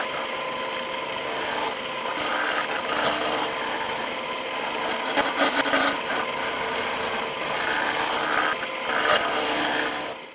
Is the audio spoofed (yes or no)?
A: no